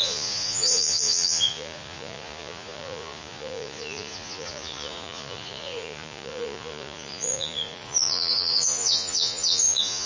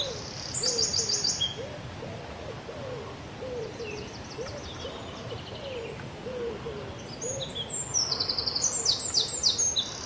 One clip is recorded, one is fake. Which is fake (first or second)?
first